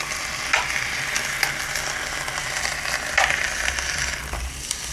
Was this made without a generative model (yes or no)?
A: yes